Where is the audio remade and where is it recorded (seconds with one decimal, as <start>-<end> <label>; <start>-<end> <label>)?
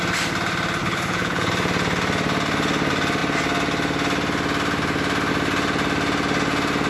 0.0-0.8 recorded; 0.8-1.5 remade; 1.5-6.9 recorded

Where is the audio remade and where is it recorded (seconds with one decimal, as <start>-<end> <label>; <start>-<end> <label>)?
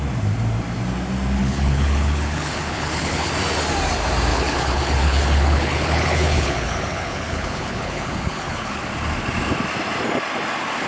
0.0-1.4 recorded; 1.4-3.3 remade; 3.3-4.3 recorded; 4.3-8.8 remade; 8.8-10.9 recorded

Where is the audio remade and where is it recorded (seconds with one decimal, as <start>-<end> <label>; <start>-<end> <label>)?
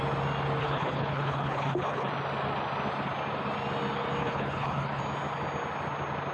0.0-0.6 recorded; 0.6-2.1 remade; 2.1-4.2 recorded; 4.2-5.0 remade; 5.0-6.3 recorded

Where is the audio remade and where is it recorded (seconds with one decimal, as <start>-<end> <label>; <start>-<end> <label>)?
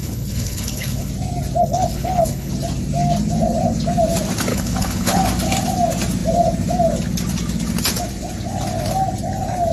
0.0-1.1 remade; 1.1-1.6 recorded; 1.6-2.5 remade; 2.5-4.5 recorded; 4.5-5.2 remade; 5.2-9.7 recorded